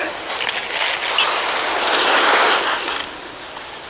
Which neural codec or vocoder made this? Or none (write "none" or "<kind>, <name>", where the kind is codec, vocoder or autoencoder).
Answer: none